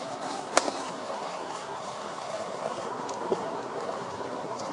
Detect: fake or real fake